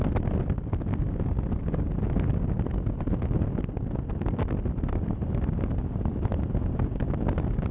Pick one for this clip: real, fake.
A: real